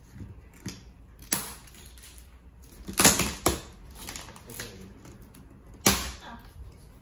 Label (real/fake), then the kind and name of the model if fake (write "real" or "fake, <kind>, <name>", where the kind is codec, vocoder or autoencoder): real